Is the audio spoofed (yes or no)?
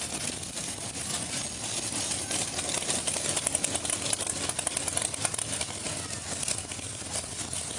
no